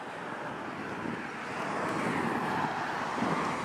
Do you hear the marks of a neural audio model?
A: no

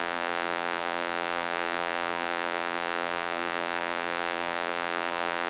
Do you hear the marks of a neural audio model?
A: yes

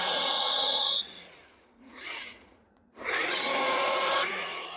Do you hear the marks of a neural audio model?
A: yes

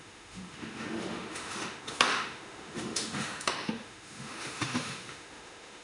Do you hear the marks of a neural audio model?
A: yes